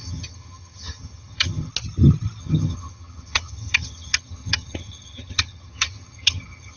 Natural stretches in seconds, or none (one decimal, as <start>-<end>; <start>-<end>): 1.7-2.4